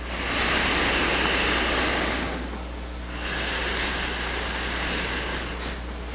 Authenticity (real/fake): real